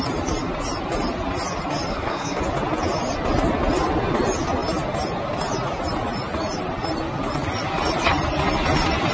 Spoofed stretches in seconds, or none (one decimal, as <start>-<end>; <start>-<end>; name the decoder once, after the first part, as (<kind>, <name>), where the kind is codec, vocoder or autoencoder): 1.9-2.4 (codec, SNAC)